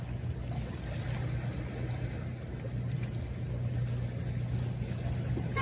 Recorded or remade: recorded